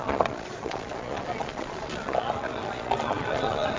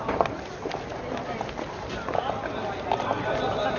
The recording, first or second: second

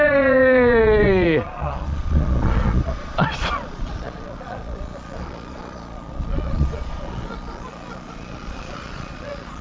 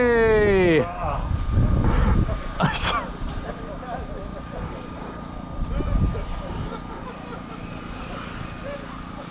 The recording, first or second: second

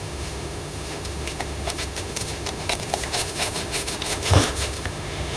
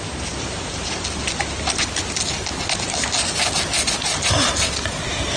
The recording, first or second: second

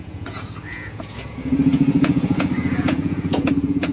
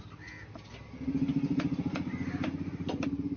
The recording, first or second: second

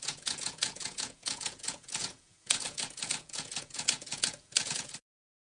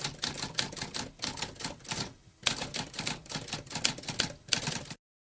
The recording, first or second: second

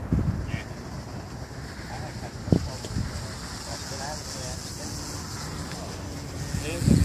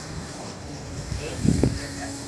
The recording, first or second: first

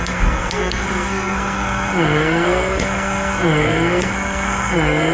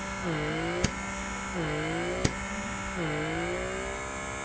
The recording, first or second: second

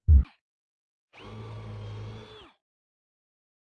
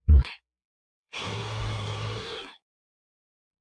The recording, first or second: first